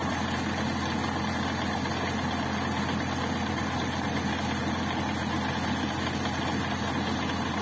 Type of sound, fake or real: real